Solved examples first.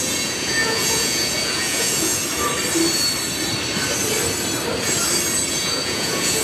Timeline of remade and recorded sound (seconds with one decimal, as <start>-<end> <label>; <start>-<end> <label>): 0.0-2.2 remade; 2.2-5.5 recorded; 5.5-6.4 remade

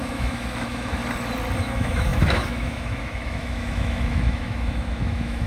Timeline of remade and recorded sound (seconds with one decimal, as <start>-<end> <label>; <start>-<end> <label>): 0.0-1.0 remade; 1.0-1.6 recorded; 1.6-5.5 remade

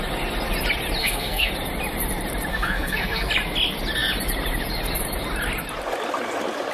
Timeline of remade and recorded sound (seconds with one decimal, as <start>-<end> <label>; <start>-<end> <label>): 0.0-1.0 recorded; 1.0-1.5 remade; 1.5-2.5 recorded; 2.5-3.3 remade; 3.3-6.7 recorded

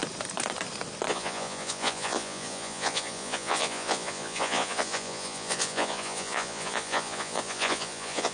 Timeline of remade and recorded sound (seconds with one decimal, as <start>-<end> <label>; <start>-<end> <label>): 0.0-1.1 recorded; 1.1-8.3 remade